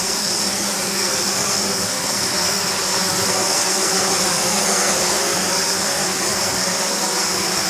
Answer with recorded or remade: remade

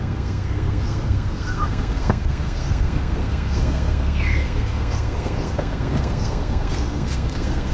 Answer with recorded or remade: remade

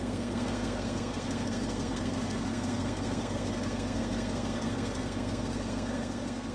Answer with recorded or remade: remade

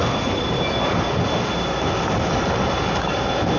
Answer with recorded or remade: recorded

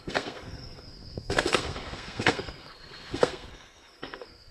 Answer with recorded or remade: remade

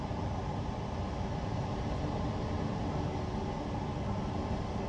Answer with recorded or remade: recorded